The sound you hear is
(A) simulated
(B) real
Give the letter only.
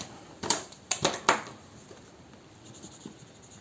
A